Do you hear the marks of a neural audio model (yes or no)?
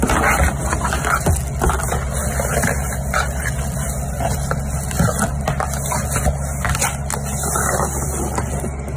no